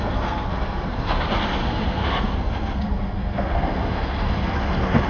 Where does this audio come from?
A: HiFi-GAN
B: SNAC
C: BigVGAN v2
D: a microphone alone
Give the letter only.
B